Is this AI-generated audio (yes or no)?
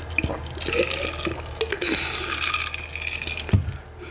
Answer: no